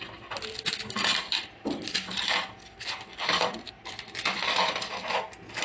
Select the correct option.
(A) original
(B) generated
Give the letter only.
A